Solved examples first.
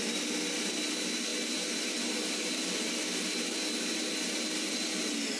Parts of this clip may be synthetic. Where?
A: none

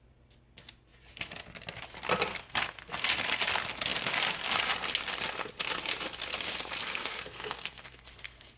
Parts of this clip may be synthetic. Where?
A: 2.3-2.9; 6.8-8.6

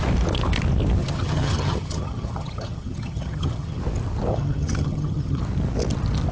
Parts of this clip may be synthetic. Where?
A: 1.0-3.8; 4.3-5.4

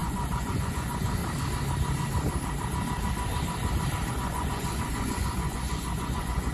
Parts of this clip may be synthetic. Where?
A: 0.0-1.2; 4.1-6.5